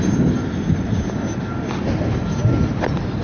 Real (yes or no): yes